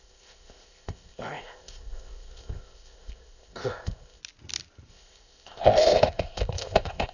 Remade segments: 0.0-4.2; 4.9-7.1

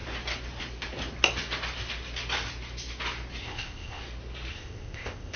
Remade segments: 3.4-4.0; 4.5-5.4

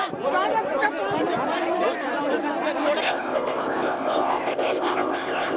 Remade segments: 3.0-5.6

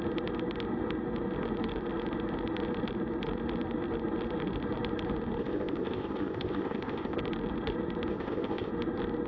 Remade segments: 5.4-7.2; 8.1-8.7